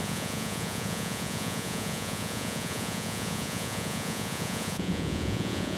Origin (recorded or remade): remade